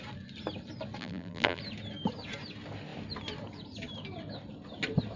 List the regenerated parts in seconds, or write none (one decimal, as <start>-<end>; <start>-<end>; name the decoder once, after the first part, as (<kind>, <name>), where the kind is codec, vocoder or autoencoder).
1.0-1.6 (vocoder, BigVGAN v2)